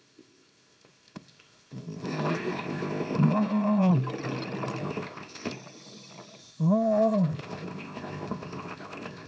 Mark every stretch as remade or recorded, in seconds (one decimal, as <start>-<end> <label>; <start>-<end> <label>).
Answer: 0.0-3.9 remade; 3.9-4.8 recorded; 4.8-5.5 remade; 5.5-6.4 recorded; 6.4-9.3 remade